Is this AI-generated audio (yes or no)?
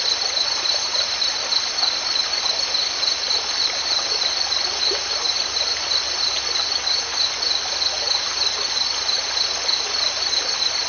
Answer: no